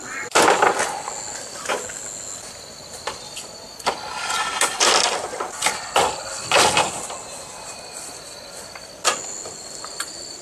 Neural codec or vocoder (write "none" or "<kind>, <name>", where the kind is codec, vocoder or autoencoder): none